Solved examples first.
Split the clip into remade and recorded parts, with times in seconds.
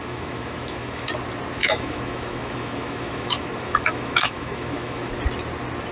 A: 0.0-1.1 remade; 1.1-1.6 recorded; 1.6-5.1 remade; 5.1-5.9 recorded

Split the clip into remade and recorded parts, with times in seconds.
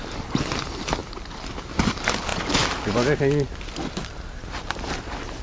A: 0.0-5.4 recorded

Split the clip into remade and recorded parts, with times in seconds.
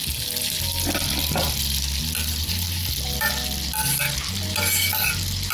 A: 0.0-5.5 recorded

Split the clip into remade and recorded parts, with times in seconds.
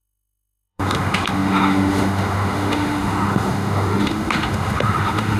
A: 0.0-5.4 remade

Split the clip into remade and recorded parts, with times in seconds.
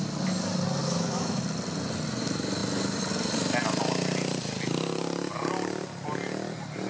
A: 0.0-0.8 recorded; 0.8-1.4 remade; 1.4-6.9 recorded